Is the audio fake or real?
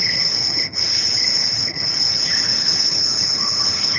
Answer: fake